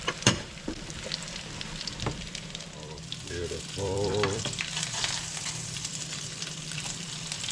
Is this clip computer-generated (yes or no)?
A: yes